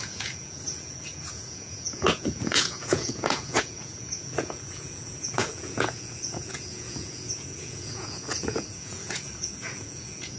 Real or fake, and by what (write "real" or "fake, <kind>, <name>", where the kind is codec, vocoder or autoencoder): fake, vocoder, Vocos